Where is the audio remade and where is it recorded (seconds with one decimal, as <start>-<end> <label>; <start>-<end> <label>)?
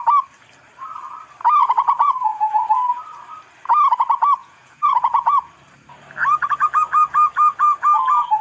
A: 0.0-1.6 recorded; 1.6-2.7 remade; 2.7-4.4 recorded; 4.4-5.5 remade; 5.5-8.4 recorded